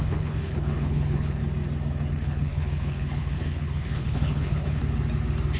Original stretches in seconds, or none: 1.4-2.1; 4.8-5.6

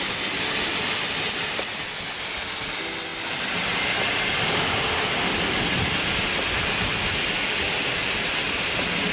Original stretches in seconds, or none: 0.0-9.1

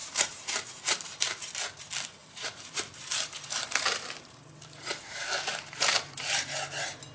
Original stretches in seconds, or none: 1.5-2.2; 6.5-7.1

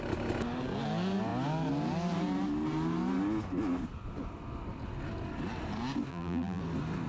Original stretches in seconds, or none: 0.0-6.1; 6.6-7.1

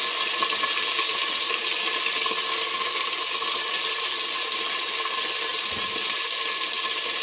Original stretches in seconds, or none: 0.0-1.2; 1.8-5.5

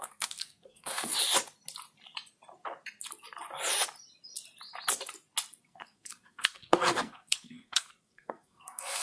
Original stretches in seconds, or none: 1.1-5.6

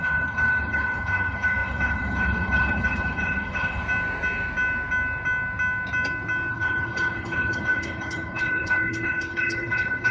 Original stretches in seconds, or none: 3.8-6.5

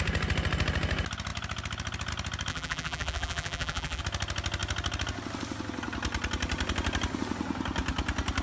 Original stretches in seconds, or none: 0.0-2.5; 4.0-8.4